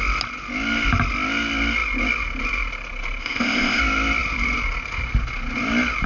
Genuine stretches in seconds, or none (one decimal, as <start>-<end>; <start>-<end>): 0.0-3.2; 3.8-6.1